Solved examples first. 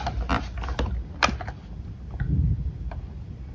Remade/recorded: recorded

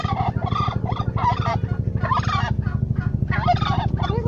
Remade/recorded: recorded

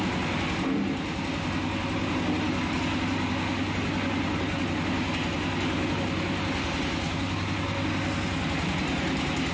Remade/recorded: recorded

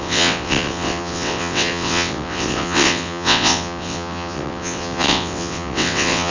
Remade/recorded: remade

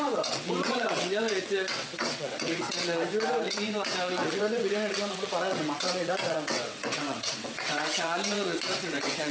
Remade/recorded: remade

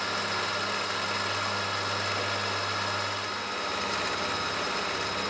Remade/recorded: recorded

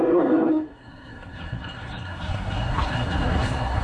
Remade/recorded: remade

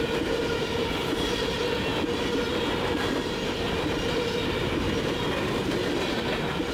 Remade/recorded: recorded